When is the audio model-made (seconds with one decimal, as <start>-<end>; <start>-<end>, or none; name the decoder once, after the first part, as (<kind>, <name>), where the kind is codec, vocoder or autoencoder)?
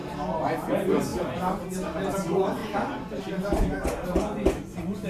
0.0-0.7 (vocoder, BigVGAN v2); 2.6-3.2